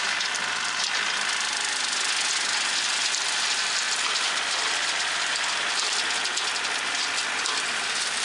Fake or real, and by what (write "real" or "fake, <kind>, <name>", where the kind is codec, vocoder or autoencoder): real